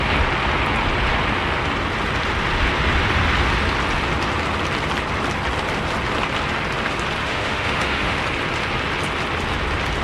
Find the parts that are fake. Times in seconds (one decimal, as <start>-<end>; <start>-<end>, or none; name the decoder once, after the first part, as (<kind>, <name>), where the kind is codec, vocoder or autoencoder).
7.2-8.2 (autoencoder, DAC-VAE)